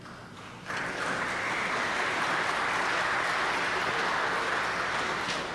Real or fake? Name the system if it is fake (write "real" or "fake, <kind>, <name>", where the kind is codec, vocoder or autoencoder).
real